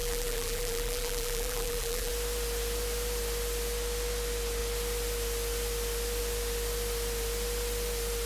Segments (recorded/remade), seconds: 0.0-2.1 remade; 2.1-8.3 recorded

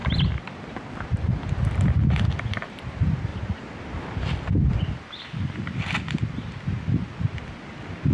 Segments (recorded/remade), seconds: 0.0-0.5 recorded; 0.5-3.3 remade; 3.3-5.2 recorded; 5.2-8.1 remade

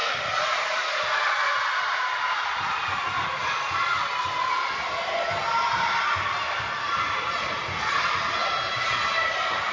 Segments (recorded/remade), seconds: 0.0-8.4 remade; 8.4-9.1 recorded; 9.1-9.7 remade

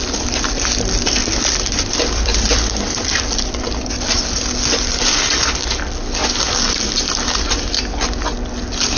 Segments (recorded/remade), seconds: 0.0-1.2 recorded; 1.2-4.1 remade; 4.1-6.2 recorded; 6.2-7.8 remade; 7.8-9.0 recorded

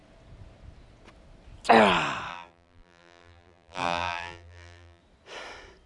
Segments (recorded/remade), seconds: 0.0-2.3 recorded; 2.3-5.0 remade; 5.0-5.9 recorded

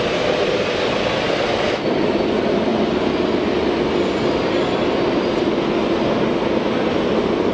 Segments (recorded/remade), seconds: 0.0-7.5 recorded